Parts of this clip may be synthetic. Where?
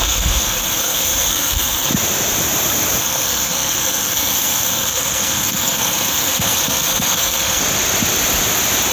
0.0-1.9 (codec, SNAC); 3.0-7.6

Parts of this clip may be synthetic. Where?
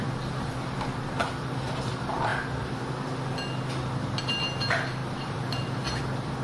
1.2-1.8 (vocoder, BigVGAN v2); 5.0-6.0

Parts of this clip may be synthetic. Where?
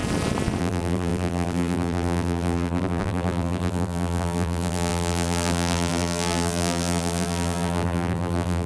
0.6-8.7 (vocoder, BigVGAN v2)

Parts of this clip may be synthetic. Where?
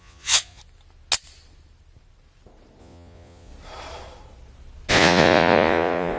0.0-0.6 (vocoder, Vocos); 2.8-3.5; 4.9-6.2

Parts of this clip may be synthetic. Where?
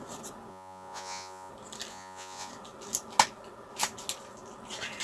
0.5-1.5 (vocoder, Vocos); 1.9-2.5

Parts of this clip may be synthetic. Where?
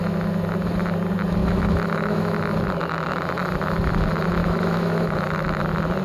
1.4-2.4 (autoencoder, DAC-VAE); 4.4-5.6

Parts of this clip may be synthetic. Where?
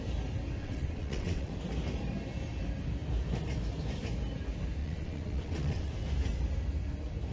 0.6-1.5 (vocoder, WaveNeXt); 4.8-5.9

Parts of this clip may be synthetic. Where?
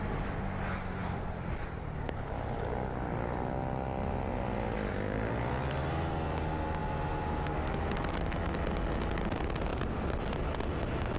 none